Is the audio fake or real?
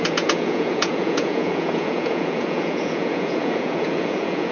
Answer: fake